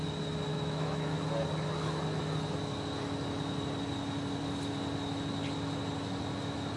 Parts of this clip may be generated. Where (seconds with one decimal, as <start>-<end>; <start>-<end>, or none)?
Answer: 0.5-1.2